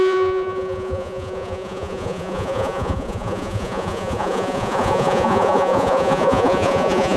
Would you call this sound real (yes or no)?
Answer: no